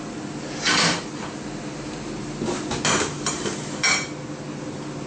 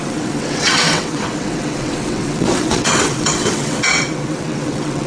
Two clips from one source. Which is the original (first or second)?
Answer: first